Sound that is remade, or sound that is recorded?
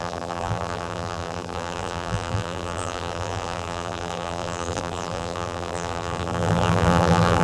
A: remade